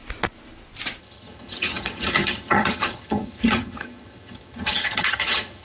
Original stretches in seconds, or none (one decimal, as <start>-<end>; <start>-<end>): 0.0-1.0